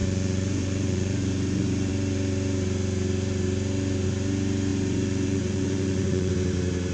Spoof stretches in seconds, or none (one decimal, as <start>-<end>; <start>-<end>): 0.0-1.9; 4.7-6.3